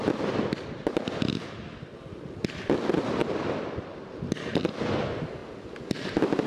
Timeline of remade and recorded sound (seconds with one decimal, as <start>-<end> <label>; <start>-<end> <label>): 0.0-6.5 recorded